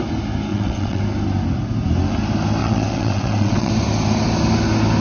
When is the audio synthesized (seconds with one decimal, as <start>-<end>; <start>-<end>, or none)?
0.5-1.0; 2.6-3.7